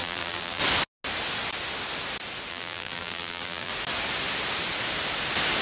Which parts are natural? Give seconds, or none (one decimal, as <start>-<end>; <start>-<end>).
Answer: 0.6-2.5; 3.7-5.6